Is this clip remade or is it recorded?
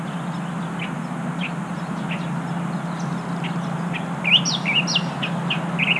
recorded